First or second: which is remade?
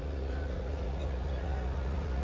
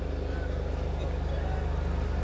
first